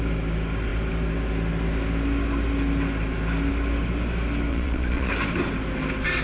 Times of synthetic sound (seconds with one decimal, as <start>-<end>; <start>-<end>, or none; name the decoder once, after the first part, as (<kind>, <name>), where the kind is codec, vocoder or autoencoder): 4.5-5.1 (vocoder, Vocos)